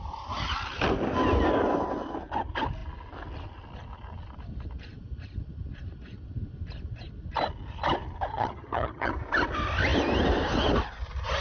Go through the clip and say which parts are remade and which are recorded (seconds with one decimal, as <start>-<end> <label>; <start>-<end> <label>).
0.0-8.3 recorded; 8.3-9.1 remade; 9.1-11.4 recorded